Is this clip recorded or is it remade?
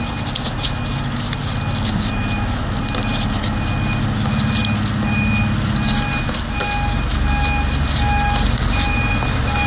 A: recorded